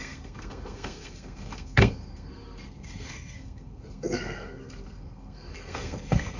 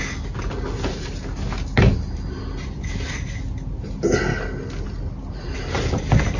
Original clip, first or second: second